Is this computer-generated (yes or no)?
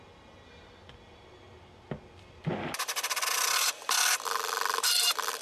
no